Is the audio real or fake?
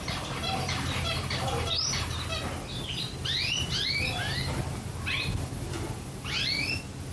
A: fake